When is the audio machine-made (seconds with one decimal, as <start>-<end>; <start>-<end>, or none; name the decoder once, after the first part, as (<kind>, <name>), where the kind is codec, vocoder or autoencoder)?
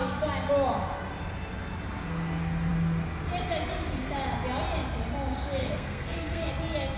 5.6-6.5 (codec, SNAC)